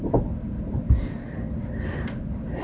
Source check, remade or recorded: recorded